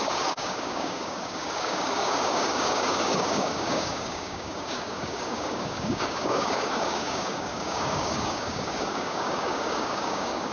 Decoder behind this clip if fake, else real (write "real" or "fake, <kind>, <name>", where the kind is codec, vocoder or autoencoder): fake, codec, DAC